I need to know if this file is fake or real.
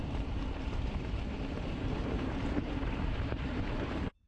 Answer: fake